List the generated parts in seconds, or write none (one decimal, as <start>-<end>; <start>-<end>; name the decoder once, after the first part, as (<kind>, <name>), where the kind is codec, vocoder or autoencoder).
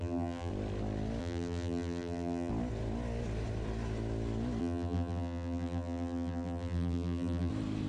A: 0.0-0.5 (vocoder, BigVGAN v2); 1.2-2.5; 4.6-7.5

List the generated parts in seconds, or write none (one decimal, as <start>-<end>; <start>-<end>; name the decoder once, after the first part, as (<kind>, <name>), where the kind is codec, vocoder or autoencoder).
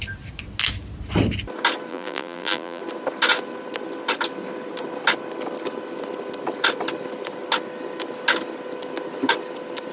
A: 1.9-2.8 (vocoder, BigVGAN v2)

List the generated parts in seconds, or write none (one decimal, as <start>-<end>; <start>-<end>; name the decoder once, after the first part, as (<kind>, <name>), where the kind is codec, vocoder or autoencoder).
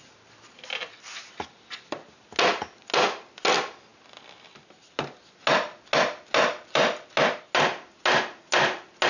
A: none